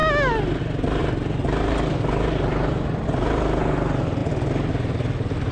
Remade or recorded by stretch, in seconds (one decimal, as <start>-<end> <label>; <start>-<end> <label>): 0.0-5.5 recorded

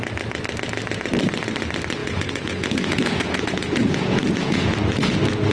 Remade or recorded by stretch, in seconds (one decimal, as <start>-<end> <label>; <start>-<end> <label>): 0.0-2.0 recorded; 2.0-5.5 remade

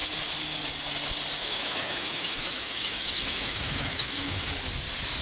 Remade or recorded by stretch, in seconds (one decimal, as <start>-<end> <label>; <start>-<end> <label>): 0.0-1.4 recorded; 1.4-4.5 remade; 4.5-5.2 recorded